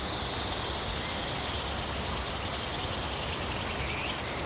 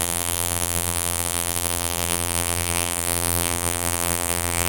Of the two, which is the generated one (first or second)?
second